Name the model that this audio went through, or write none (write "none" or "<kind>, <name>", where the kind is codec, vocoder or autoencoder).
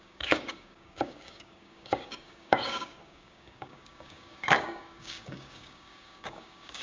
codec, DAC